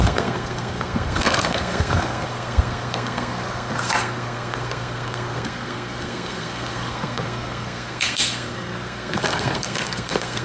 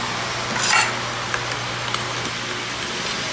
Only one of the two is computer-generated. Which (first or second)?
first